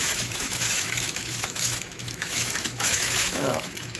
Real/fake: fake